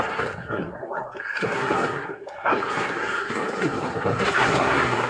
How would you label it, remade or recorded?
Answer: remade